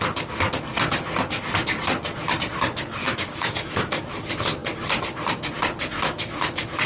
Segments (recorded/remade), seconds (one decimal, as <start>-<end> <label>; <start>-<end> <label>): 0.0-3.0 recorded; 3.0-4.0 remade; 4.0-6.9 recorded